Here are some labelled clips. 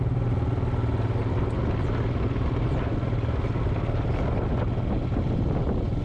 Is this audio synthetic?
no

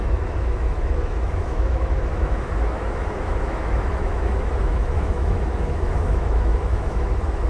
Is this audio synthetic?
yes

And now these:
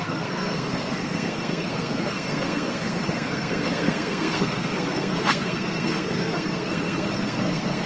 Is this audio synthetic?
yes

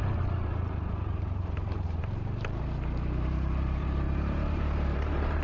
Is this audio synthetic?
yes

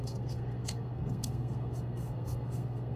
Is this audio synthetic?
yes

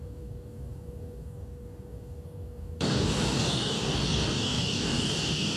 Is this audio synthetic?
yes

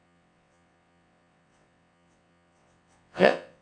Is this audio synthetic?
yes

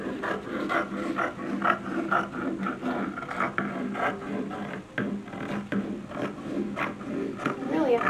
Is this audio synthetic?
no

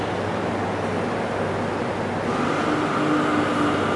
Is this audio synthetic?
no